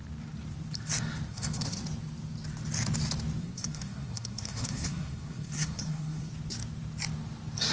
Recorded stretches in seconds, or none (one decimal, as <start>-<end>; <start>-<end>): 0.0-1.3; 1.8-3.4; 6.3-7.7